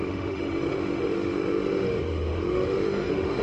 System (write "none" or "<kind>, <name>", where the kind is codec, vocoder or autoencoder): autoencoder, DAC-VAE